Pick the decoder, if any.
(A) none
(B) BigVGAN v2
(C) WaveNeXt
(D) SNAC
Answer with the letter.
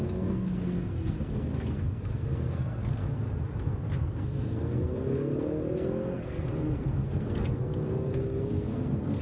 D